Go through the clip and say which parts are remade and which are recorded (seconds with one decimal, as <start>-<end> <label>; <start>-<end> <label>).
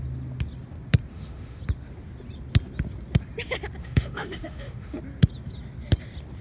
0.0-1.1 recorded; 1.1-1.6 remade; 1.6-3.8 recorded; 3.8-5.0 remade; 5.0-6.4 recorded